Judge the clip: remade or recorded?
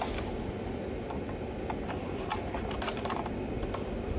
recorded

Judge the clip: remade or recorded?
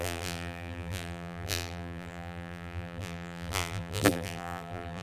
remade